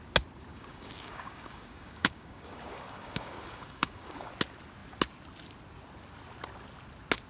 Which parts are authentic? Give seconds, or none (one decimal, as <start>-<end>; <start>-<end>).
0.0-0.5; 4.3-7.3